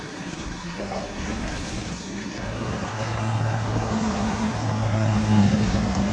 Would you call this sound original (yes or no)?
no